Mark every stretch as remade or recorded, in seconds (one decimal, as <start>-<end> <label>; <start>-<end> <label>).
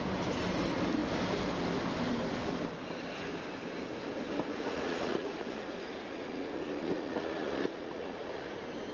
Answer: 0.0-4.5 recorded; 4.5-8.5 remade; 8.5-8.9 recorded